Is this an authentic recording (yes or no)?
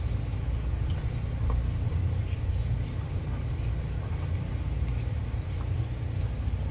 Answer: yes